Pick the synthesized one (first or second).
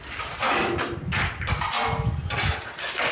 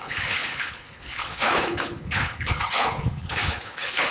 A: second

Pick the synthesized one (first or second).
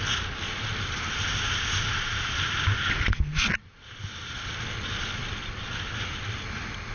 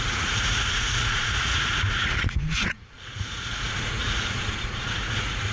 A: second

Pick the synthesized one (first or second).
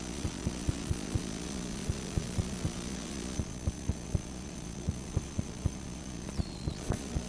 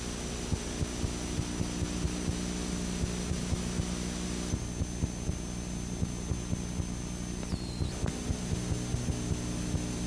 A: first